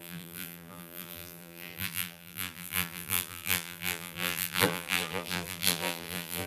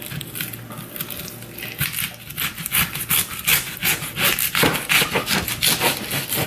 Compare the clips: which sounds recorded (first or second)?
second